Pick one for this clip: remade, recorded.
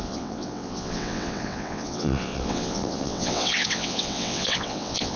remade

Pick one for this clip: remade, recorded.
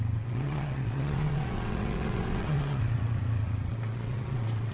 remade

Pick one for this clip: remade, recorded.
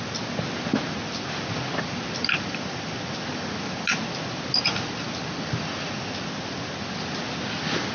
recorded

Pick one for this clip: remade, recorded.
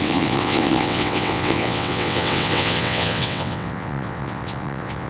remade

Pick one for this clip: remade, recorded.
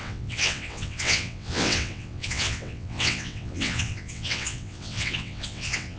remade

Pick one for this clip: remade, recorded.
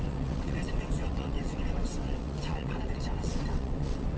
remade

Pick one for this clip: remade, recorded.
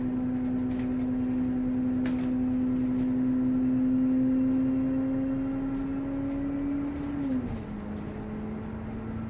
recorded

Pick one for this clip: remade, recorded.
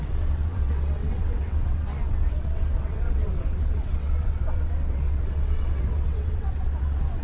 remade